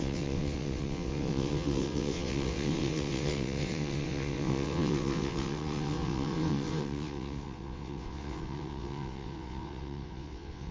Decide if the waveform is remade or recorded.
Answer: remade